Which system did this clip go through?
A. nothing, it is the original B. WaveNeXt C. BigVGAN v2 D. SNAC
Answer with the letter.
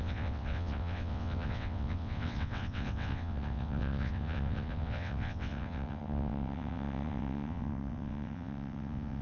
B